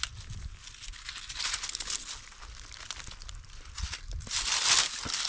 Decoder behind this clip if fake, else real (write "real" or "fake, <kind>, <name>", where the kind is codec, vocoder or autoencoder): real